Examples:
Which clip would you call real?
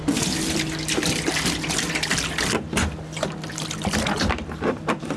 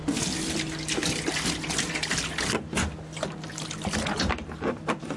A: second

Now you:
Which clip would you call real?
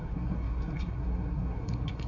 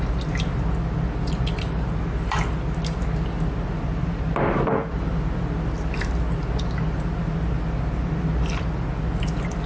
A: second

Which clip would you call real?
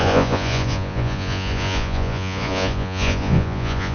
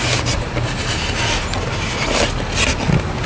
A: second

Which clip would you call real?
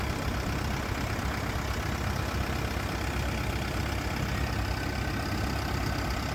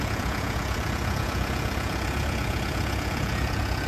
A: first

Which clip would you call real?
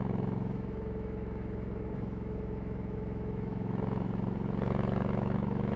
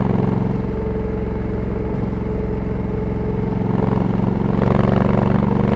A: second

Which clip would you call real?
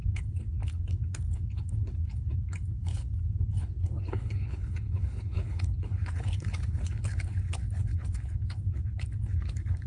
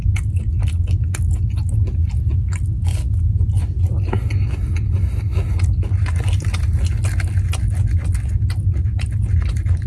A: second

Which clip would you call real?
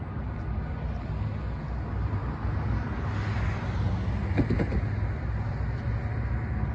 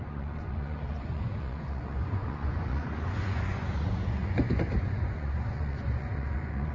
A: first